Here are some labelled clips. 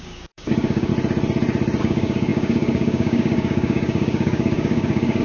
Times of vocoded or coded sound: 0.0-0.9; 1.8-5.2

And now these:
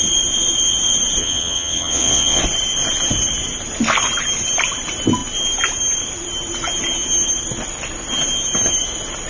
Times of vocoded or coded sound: 1.2-2.4